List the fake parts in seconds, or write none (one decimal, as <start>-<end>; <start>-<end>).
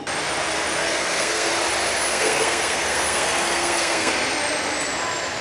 0.8-1.5; 2.1-4.1